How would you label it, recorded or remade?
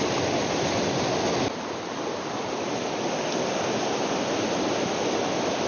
recorded